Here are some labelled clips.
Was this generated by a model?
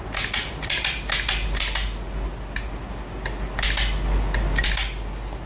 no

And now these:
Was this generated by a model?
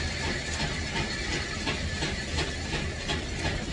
no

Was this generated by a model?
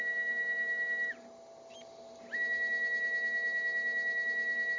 no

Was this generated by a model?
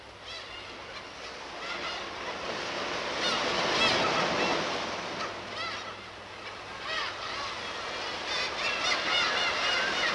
no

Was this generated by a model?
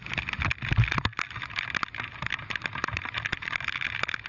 no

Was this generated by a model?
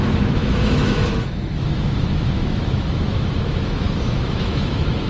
yes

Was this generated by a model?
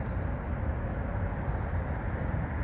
no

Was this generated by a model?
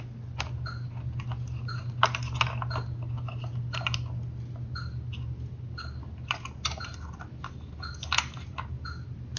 no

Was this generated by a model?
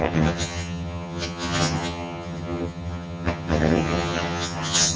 yes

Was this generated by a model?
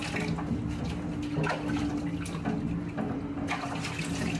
no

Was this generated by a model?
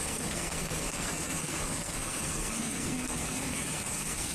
yes